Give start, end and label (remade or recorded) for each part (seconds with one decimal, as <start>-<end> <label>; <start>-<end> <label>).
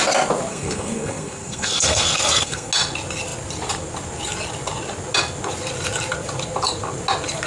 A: 0.0-0.5 recorded; 0.5-2.7 remade; 2.7-7.5 recorded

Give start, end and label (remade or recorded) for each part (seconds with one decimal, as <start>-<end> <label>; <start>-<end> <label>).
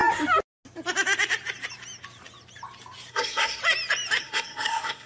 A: 0.0-3.1 recorded; 3.1-3.6 remade; 3.6-4.2 recorded; 4.2-5.1 remade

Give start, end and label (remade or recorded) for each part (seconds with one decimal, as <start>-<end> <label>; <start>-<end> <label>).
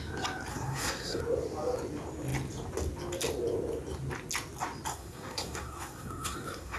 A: 0.0-0.5 recorded; 0.5-1.2 remade; 1.2-4.9 recorded; 4.9-6.8 remade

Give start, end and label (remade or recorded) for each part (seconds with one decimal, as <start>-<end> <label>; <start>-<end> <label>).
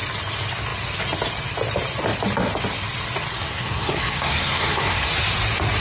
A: 0.0-3.3 recorded; 3.3-5.1 remade; 5.1-5.8 recorded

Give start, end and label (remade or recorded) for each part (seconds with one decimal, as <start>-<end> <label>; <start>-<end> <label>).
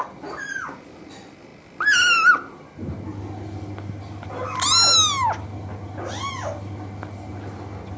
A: 0.0-8.0 recorded